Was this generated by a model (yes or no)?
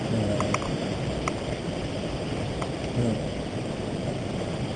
no